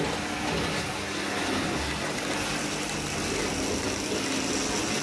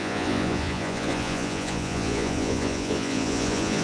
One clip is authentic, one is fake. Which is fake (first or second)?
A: second